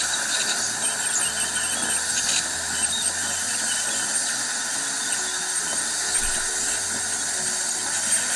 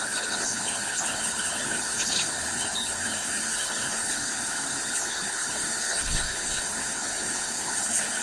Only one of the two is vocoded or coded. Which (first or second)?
second